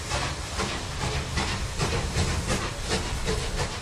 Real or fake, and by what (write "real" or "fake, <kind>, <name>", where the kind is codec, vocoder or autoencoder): real